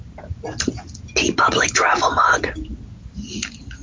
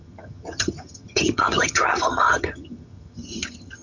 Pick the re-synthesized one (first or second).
second